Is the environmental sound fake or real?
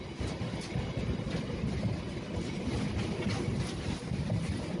real